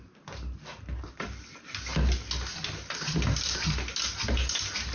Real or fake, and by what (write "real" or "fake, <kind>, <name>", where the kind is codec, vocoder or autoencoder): real